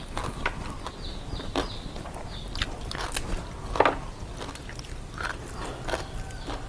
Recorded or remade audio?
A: recorded